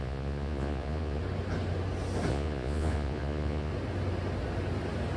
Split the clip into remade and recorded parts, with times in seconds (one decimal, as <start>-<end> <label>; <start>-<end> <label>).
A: 0.0-1.2 remade; 1.2-2.3 recorded; 2.3-3.7 remade; 3.7-5.2 recorded